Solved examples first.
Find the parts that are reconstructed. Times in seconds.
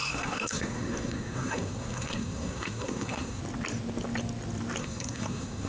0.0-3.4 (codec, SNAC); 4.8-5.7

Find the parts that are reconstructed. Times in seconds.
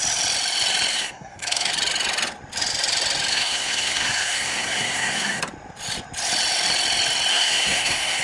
0.9-1.7 (codec, SNAC); 3.3-5.4; 7.3-8.2